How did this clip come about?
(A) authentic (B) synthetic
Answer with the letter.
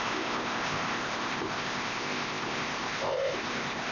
B